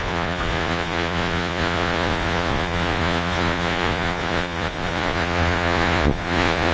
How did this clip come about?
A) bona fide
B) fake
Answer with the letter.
B